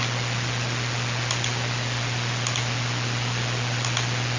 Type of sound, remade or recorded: recorded